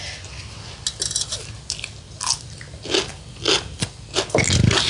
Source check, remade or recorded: recorded